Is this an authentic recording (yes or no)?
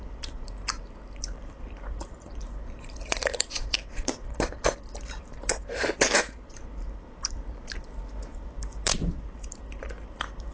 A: no